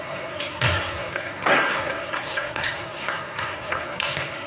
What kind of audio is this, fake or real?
fake